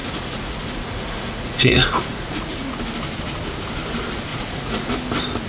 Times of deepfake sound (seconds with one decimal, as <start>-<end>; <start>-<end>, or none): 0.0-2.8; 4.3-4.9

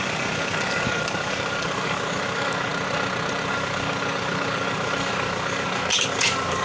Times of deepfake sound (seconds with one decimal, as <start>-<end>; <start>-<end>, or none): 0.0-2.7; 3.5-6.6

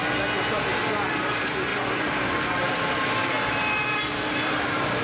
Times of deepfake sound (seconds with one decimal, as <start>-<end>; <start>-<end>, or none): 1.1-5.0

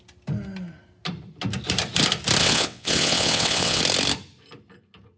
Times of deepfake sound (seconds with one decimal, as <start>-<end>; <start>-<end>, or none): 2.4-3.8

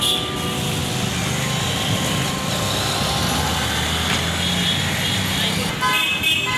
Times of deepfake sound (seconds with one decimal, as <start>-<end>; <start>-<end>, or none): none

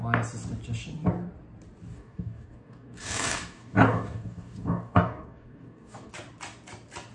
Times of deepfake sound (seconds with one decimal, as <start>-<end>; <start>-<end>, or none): 1.9-6.1

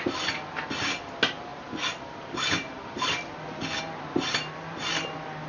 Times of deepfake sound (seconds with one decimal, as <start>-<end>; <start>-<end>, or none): none